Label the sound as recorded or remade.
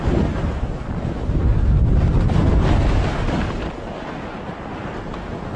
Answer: recorded